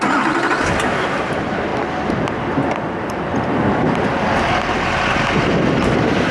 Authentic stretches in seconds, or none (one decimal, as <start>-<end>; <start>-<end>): 1.7-2.9; 4.1-5.6